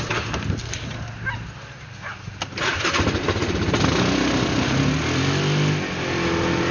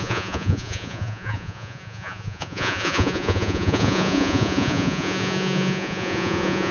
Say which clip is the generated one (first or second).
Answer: second